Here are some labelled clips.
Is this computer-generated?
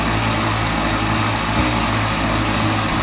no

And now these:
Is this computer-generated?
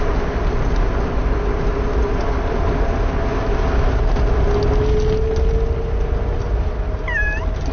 no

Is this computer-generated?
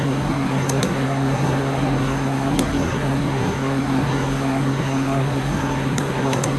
yes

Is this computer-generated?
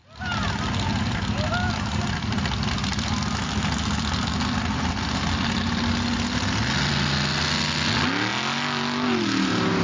no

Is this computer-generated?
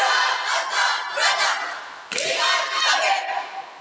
no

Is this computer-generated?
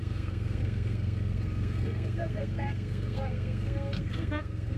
yes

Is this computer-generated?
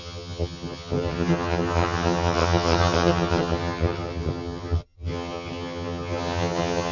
yes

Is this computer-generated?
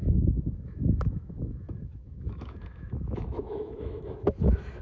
yes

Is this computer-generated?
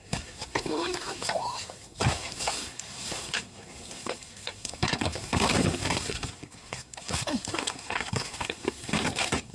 yes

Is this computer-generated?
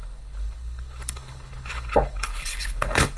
yes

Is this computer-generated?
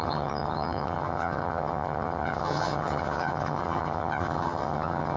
yes